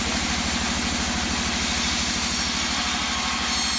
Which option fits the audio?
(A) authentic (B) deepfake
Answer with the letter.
A